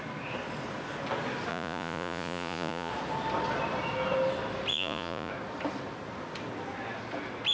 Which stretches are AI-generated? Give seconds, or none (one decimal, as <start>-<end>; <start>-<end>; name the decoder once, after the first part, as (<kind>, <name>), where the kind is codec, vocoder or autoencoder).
1.5-2.9 (vocoder, Vocos); 4.7-5.3

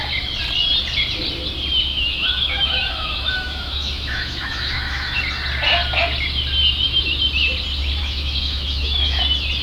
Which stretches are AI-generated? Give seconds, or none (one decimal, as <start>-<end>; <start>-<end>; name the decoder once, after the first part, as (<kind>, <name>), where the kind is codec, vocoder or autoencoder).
1.9-5.2 (autoencoder, DAC-VAE); 8.0-9.2

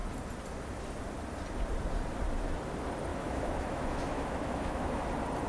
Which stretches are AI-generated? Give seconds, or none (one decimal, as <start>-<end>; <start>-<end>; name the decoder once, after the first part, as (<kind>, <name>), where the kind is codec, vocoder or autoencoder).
3.1-5.0 (autoencoder, DAC-VAE)

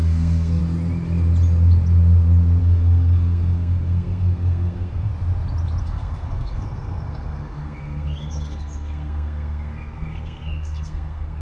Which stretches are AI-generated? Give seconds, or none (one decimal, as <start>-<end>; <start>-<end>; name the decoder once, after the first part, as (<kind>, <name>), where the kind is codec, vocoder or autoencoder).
0.0-0.6 (codec, SNAC); 2.6-5.1; 5.8-11.4